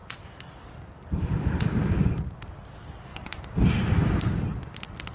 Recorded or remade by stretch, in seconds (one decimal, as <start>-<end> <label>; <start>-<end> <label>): 0.0-3.1 recorded; 3.1-4.2 remade; 4.2-5.1 recorded